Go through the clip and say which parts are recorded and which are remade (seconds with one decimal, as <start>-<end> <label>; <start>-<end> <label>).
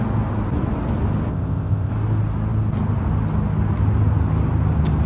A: 0.0-1.3 recorded; 1.3-1.9 remade; 1.9-5.1 recorded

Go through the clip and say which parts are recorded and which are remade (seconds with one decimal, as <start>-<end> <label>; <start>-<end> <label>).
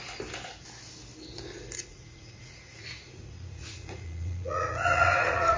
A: 0.0-1.9 recorded; 1.9-5.6 remade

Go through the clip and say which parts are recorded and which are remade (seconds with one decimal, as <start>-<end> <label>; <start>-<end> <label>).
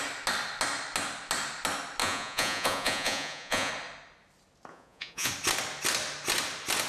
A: 0.0-2.0 recorded; 2.0-3.7 remade; 3.7-4.7 recorded; 4.7-5.3 remade; 5.3-6.9 recorded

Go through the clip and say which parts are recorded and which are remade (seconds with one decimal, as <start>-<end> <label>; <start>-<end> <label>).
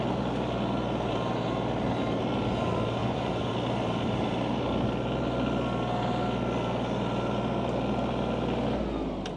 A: 0.0-3.0 recorded; 3.0-3.5 remade; 3.5-9.4 recorded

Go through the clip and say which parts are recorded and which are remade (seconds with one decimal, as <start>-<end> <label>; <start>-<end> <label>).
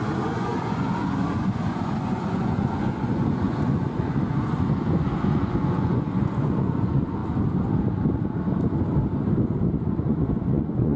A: 0.0-7.2 remade; 7.2-10.0 recorded; 10.0-11.0 remade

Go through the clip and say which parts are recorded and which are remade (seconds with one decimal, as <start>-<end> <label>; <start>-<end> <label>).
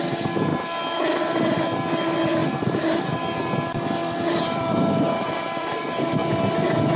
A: 0.0-2.4 recorded; 2.4-3.2 remade; 3.2-4.0 recorded; 4.0-5.8 remade; 5.8-7.0 recorded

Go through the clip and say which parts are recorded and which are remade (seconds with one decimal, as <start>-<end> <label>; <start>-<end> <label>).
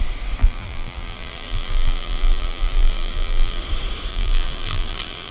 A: 0.0-0.4 recorded; 0.4-3.6 remade; 3.6-4.1 recorded; 4.1-5.3 remade